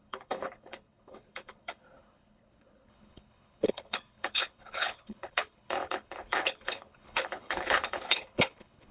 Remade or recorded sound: remade